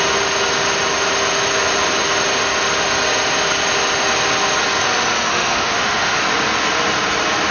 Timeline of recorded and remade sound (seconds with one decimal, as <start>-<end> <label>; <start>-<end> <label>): 0.0-5.3 recorded; 5.3-6.2 remade; 6.2-7.5 recorded